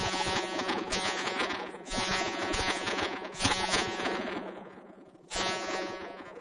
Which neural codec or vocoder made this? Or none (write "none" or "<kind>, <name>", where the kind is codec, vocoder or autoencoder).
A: vocoder, Vocos